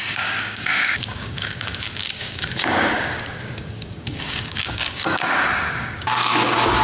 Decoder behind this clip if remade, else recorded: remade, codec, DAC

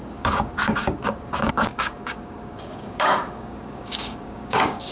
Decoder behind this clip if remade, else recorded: remade, codec, DAC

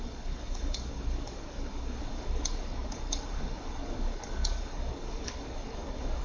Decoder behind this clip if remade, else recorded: remade, codec, DAC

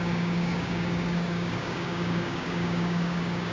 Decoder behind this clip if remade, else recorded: remade, codec, DAC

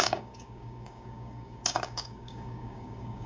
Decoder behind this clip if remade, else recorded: remade, codec, DAC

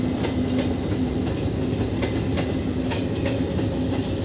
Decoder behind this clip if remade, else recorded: recorded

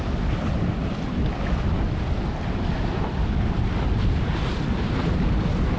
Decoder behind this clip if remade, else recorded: recorded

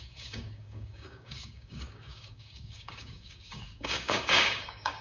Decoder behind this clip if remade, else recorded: remade, codec, DAC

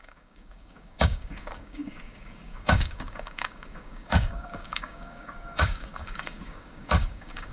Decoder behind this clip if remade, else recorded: remade, codec, DAC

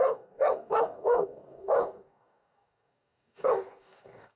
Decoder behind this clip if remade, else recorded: remade, codec, DAC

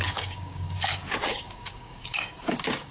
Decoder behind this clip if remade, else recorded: remade, codec, DAC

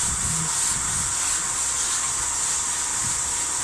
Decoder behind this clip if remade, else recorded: recorded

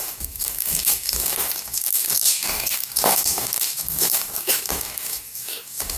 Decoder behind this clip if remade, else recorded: remade, codec, DAC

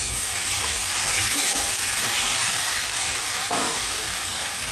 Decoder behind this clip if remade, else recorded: remade, codec, DAC